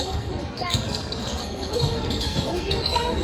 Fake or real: fake